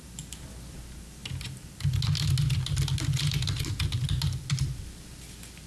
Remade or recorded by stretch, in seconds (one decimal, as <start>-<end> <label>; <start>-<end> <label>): 0.0-5.7 recorded